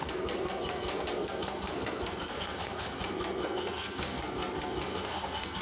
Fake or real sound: fake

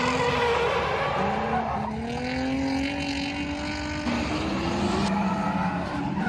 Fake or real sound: real